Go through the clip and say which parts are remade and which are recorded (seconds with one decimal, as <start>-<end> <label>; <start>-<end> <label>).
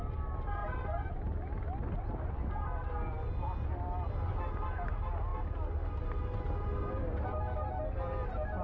0.0-8.6 recorded